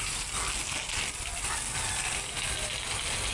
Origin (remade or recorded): recorded